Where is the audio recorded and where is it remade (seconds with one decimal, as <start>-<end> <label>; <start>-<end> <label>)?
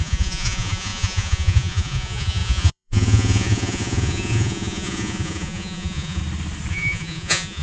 0.0-6.2 remade; 6.2-6.7 recorded; 6.7-7.6 remade